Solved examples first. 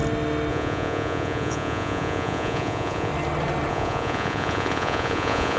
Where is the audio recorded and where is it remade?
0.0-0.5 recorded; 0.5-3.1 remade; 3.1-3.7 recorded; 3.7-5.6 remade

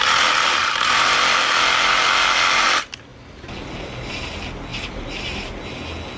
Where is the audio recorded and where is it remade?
0.0-0.6 recorded; 0.6-1.2 remade; 1.2-4.7 recorded; 4.7-5.7 remade; 5.7-6.2 recorded

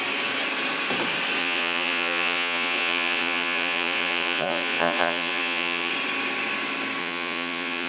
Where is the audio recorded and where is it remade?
0.0-1.4 recorded; 1.4-5.9 remade; 5.9-7.0 recorded; 7.0-7.9 remade